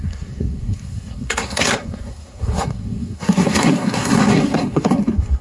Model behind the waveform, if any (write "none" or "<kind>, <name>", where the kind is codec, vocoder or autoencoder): codec, SNAC